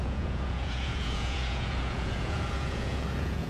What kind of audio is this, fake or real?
fake